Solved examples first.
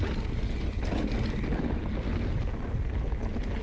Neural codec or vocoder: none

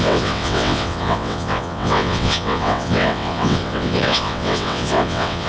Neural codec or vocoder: vocoder, WaveNeXt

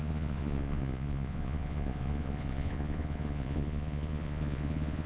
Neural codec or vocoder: vocoder, Vocos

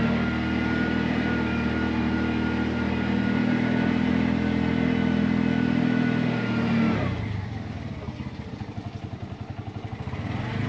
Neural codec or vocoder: none